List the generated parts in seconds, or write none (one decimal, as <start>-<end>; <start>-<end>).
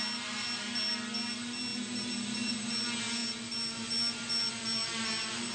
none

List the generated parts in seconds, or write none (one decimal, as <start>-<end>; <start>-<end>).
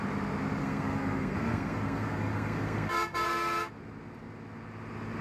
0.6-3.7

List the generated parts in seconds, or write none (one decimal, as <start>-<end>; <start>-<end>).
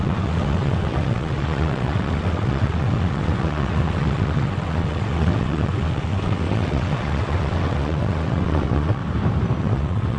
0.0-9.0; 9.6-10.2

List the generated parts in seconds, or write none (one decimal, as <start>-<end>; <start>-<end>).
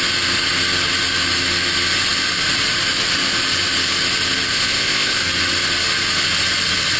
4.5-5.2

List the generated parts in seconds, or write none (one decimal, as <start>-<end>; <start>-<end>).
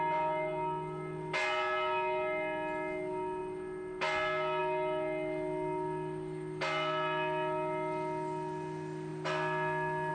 none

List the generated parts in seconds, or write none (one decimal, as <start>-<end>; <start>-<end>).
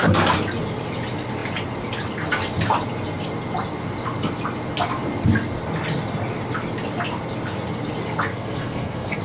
8.3-9.2